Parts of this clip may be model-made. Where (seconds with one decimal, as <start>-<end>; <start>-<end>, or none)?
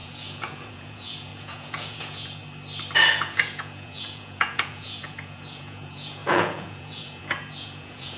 0.0-2.4; 3.1-8.2